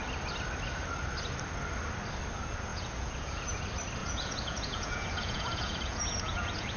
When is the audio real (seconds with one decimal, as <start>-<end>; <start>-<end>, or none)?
0.0-2.7; 3.6-4.0